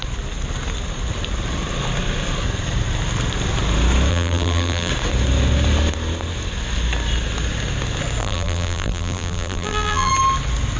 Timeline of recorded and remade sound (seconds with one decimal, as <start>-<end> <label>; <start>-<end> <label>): 0.0-4.1 recorded; 4.1-4.9 remade; 4.9-8.2 recorded; 8.2-10.1 remade; 10.1-10.8 recorded